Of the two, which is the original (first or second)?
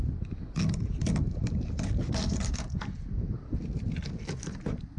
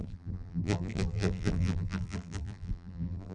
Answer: first